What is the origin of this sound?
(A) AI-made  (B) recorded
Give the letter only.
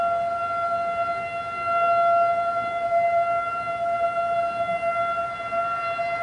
B